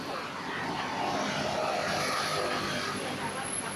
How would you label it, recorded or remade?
recorded